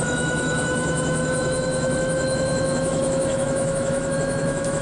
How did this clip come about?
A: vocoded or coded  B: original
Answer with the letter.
A